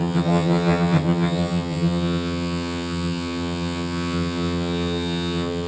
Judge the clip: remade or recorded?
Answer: remade